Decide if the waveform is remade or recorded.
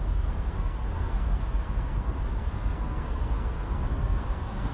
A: remade